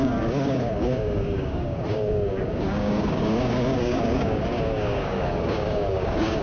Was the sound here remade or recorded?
remade